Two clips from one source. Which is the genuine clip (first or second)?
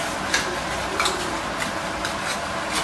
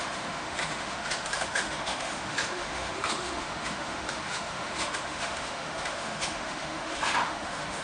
first